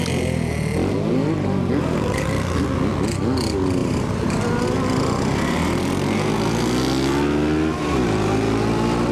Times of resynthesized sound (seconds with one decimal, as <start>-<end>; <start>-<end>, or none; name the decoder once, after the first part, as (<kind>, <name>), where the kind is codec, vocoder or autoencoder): 3.8-4.4 (vocoder, BigVGAN v2)